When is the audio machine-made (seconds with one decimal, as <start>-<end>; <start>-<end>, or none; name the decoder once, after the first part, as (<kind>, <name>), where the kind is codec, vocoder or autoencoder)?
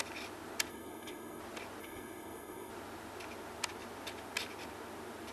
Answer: 0.7-1.4 (codec, SNAC); 1.8-2.7